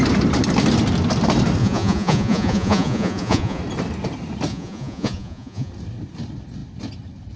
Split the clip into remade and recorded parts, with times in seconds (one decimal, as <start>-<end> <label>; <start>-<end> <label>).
0.0-1.6 recorded; 1.6-3.6 remade; 3.6-4.5 recorded; 4.5-5.7 remade; 5.7-7.4 recorded